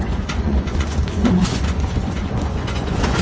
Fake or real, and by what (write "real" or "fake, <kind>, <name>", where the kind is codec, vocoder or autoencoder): fake, vocoder, Vocos